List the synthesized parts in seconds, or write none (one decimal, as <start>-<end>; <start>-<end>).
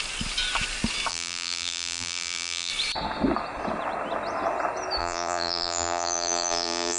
1.1-2.7; 5.0-7.0